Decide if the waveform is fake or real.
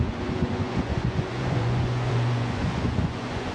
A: fake